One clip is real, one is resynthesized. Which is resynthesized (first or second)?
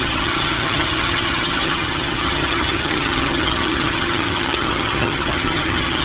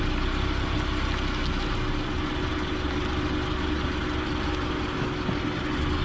first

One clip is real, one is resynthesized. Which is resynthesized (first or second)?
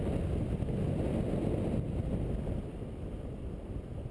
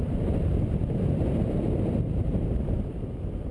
second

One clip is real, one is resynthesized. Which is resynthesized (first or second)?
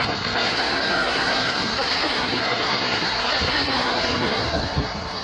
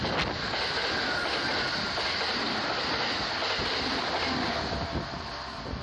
first